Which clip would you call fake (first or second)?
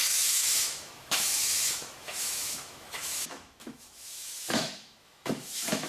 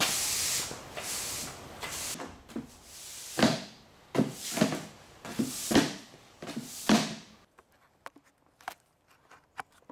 first